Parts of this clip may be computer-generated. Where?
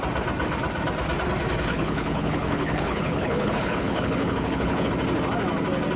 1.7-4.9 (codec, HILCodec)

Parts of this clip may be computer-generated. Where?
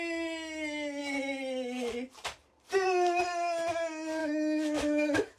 4.2-5.4 (autoencoder, DAC-VAE)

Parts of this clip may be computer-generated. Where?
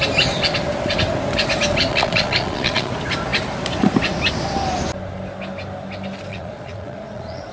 1.9-2.9 (vocoder, Vocos); 6.3-7.5